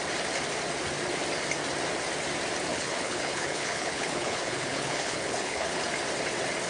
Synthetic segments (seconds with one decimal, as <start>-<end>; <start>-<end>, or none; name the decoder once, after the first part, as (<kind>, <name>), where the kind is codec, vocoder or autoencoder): 2.7-5.8 (codec, HILCodec)

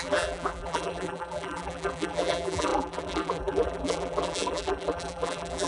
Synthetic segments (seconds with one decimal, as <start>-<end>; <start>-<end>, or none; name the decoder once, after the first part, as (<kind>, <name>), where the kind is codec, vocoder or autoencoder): 0.0-5.7 (vocoder, BigVGAN v2)

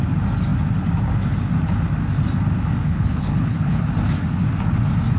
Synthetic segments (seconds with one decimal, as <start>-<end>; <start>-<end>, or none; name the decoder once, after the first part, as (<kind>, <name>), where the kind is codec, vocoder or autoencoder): 2.8-3.9 (codec, HILCodec)

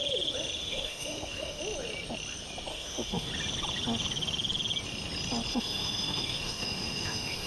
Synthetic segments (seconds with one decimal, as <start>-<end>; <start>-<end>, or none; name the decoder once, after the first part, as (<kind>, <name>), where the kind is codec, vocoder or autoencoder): 0.6-1.6 (autoencoder, DAC-VAE); 2.7-3.3; 5.5-7.5